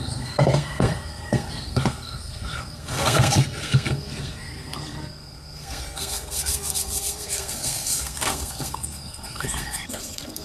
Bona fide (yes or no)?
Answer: no